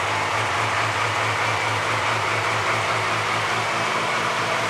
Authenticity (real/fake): fake